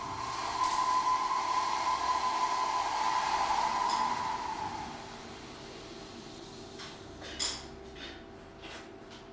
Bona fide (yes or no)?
yes